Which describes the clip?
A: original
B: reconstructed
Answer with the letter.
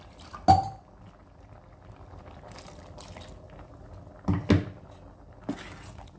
A